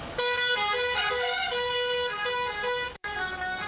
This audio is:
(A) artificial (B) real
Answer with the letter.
A